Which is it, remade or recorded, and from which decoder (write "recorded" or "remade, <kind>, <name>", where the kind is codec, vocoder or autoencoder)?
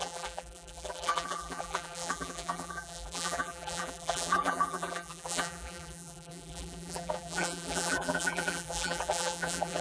remade, vocoder, BigVGAN v2